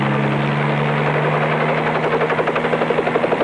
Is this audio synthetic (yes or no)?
no